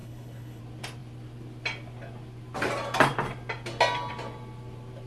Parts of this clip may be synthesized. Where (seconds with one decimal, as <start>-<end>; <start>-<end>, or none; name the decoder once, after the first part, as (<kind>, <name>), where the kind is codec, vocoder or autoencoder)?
0.0-0.6 (codec, HILCodec)